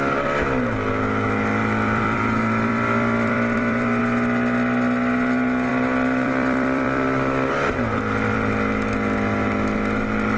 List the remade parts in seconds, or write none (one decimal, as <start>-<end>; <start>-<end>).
1.6-4.0; 5.7-8.5